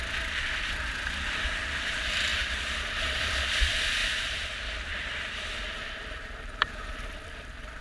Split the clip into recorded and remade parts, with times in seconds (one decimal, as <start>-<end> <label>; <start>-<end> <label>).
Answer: 0.0-7.8 remade